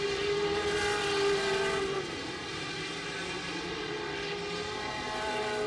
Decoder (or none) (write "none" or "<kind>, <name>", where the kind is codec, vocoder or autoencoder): none